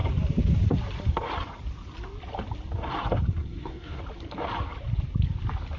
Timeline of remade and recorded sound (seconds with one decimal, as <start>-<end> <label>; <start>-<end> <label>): 0.0-3.4 recorded; 3.4-4.0 remade; 4.0-5.8 recorded

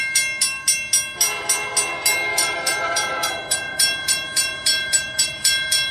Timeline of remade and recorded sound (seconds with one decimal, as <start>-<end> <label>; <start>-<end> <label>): 0.0-2.3 recorded; 2.3-5.9 remade

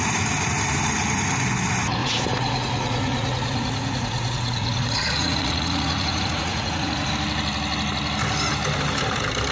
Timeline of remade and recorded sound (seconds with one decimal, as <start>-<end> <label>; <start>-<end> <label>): 0.0-2.0 recorded; 2.0-7.1 remade; 7.1-9.5 recorded

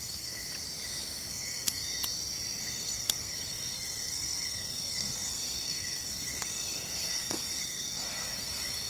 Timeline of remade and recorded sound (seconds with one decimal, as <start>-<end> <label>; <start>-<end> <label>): 0.0-0.4 remade; 0.4-1.3 recorded; 1.3-1.9 remade; 1.9-2.6 recorded; 2.6-8.9 remade

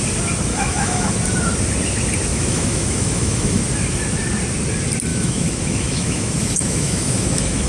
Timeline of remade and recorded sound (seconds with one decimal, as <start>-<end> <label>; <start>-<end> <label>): 0.0-0.5 recorded; 0.5-1.1 remade; 1.1-2.3 recorded; 2.3-3.6 remade; 3.6-5.1 recorded; 5.1-7.7 remade

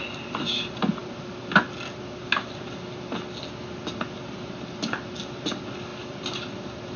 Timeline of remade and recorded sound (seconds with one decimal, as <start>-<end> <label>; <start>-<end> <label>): 0.0-7.0 recorded